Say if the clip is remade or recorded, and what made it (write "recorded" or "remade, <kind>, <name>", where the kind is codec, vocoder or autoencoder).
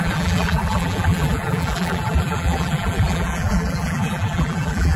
remade, vocoder, BigVGAN v2